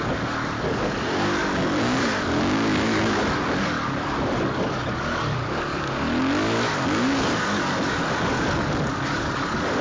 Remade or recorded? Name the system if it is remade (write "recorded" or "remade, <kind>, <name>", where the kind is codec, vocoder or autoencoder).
remade, codec, DAC